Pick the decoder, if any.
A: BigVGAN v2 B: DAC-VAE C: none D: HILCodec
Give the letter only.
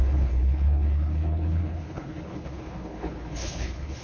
D